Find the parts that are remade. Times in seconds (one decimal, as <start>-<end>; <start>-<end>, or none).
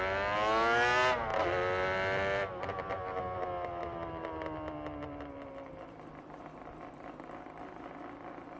none